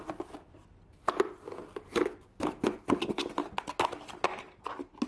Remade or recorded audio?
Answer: recorded